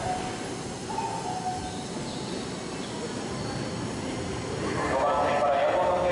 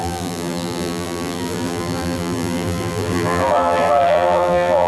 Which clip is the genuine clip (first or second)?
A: first